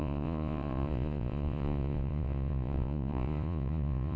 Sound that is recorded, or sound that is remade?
remade